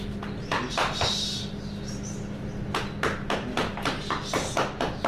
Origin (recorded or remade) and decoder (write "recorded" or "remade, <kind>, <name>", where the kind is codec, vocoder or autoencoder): recorded